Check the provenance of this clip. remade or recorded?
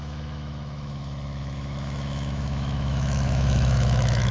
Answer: remade